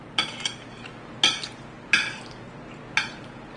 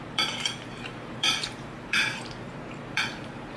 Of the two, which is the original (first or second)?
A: first